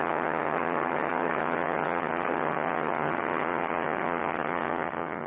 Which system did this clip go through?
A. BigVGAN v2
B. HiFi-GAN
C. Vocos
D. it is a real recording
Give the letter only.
B